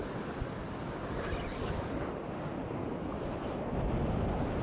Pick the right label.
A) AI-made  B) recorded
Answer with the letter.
B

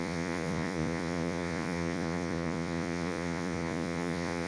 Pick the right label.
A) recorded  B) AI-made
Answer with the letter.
B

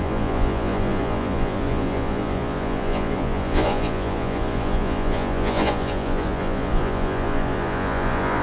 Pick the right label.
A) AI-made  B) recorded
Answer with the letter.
A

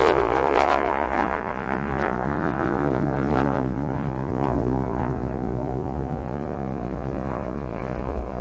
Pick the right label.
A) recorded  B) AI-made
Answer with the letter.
B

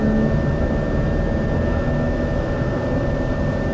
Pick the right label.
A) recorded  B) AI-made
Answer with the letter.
A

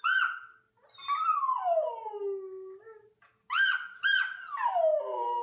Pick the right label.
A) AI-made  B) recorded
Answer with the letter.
B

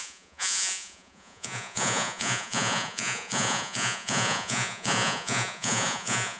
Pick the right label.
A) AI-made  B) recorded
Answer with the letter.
A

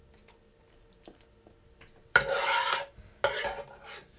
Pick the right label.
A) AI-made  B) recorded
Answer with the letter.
B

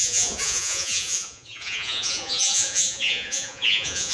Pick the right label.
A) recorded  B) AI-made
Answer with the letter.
B